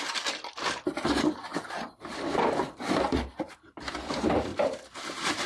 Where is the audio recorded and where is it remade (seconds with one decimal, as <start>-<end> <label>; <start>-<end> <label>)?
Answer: 0.0-5.5 remade